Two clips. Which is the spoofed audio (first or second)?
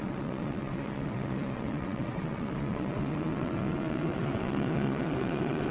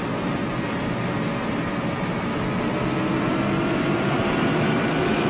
first